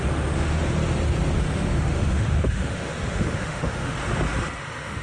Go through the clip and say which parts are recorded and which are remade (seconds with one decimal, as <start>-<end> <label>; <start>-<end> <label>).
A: 0.0-0.6 remade; 0.6-1.4 recorded; 1.4-4.0 remade; 4.0-4.6 recorded; 4.6-5.0 remade